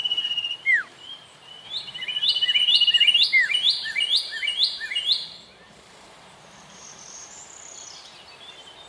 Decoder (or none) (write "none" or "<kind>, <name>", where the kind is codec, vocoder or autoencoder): vocoder, BigVGAN v2